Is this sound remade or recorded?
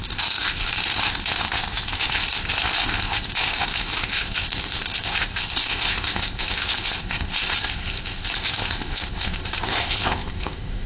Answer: remade